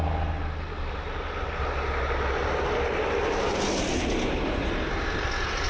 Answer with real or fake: real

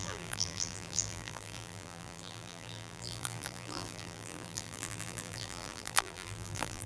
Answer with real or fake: fake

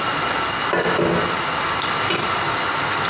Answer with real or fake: real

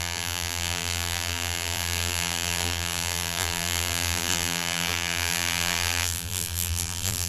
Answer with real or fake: fake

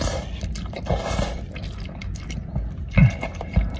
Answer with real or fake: real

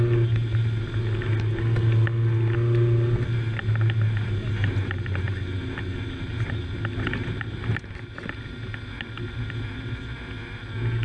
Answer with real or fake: real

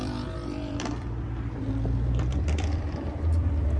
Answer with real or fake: fake